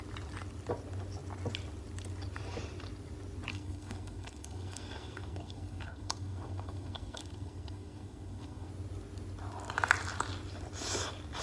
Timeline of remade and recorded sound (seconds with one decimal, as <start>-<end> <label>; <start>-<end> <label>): 0.0-3.5 recorded; 3.5-8.7 remade; 8.7-11.4 recorded